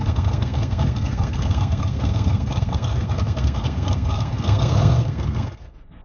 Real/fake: fake